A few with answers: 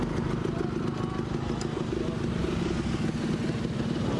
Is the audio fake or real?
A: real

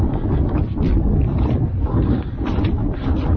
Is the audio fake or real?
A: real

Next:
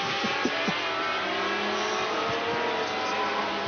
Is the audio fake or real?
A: real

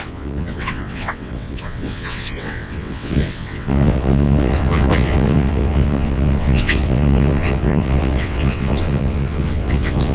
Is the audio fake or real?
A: fake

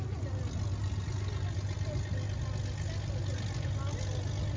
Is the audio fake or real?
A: real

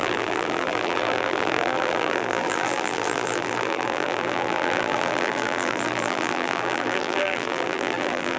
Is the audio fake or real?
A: fake